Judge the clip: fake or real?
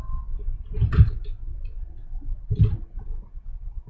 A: real